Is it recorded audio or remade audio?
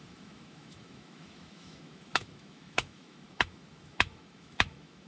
remade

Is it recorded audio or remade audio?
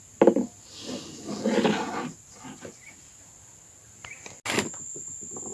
recorded